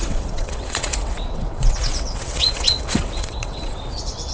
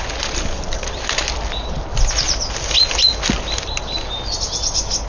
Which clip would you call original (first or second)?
second